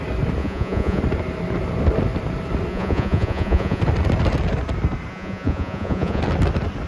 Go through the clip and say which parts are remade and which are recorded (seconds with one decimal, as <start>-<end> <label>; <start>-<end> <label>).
0.0-0.4 recorded; 0.4-1.0 remade; 1.0-2.7 recorded; 2.7-3.8 remade; 3.8-5.1 recorded; 5.1-6.2 remade; 6.2-6.9 recorded